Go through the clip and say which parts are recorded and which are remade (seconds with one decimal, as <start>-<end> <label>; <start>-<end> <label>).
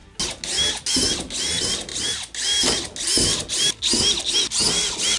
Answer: 0.0-5.2 recorded